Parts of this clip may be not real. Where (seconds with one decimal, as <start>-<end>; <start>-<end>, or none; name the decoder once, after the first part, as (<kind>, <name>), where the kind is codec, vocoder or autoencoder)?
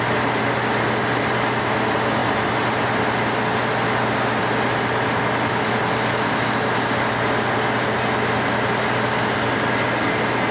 none